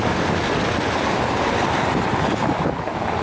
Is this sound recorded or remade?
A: remade